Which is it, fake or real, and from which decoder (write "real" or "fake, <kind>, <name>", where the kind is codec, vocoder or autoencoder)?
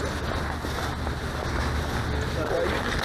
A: real